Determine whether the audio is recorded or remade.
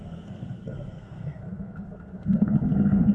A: remade